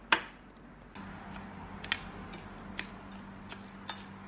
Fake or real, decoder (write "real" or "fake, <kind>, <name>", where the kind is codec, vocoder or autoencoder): real